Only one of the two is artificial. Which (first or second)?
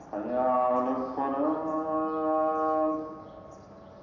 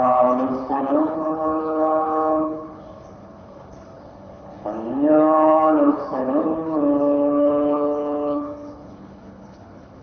second